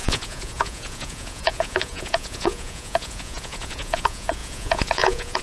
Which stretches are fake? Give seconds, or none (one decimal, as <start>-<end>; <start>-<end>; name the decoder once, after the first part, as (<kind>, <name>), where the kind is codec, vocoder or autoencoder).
0.0-5.4 (vocoder, Vocos)